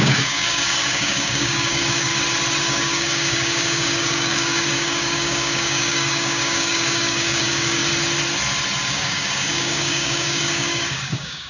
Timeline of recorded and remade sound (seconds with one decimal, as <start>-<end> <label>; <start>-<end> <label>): 0.0-2.1 remade; 2.1-2.6 recorded; 2.6-7.8 remade; 7.8-8.8 recorded; 8.8-11.5 remade